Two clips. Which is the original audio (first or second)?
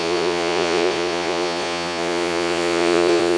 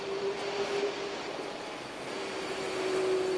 second